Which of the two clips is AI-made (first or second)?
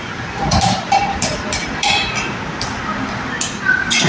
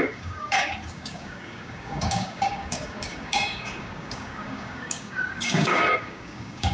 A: second